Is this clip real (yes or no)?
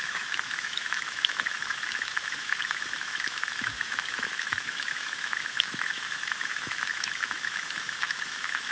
no